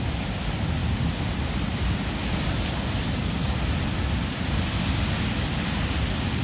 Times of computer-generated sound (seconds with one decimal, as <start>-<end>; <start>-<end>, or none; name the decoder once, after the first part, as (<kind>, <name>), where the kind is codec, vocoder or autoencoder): none

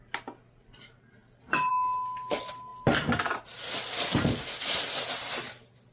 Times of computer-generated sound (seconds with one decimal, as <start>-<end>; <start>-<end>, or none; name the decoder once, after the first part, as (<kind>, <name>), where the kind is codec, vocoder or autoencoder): none